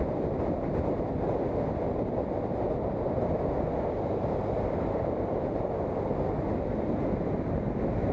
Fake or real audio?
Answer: real